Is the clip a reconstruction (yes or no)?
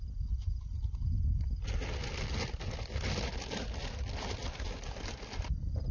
no